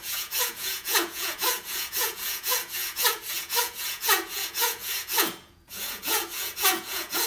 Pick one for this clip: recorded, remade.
remade